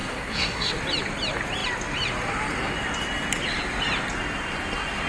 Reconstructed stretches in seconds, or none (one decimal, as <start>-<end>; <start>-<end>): 0.0-0.7